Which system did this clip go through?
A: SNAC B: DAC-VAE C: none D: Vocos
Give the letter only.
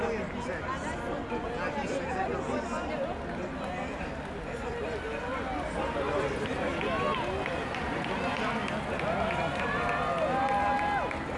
C